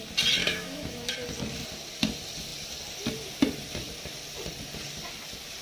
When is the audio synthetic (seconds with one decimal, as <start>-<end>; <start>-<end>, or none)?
0.4-1.1

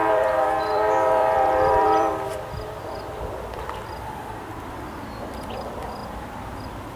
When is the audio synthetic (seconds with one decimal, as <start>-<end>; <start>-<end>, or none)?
0.0-2.1

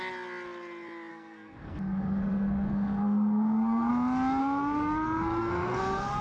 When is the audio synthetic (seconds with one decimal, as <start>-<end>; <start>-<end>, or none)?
1.1-3.9; 4.4-6.2

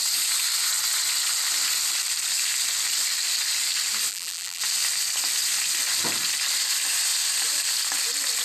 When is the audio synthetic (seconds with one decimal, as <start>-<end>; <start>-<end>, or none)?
4.1-4.6

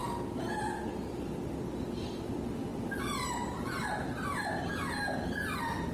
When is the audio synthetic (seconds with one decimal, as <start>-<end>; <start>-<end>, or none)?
2.2-3.8; 4.7-5.9

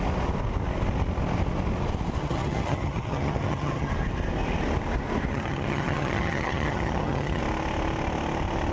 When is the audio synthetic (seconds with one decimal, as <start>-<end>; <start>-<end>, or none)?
2.2-3.9; 5.3-7.4